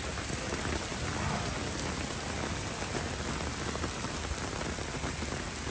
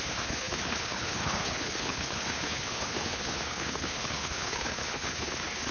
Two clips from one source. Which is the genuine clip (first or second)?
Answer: first